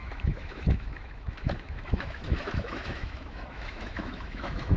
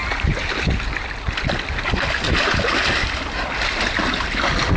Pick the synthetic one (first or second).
first